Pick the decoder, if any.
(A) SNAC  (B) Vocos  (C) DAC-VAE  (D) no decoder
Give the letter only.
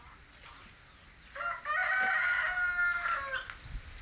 D